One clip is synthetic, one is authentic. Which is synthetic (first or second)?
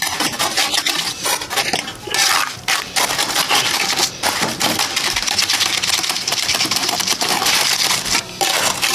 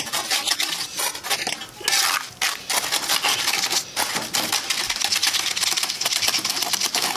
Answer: first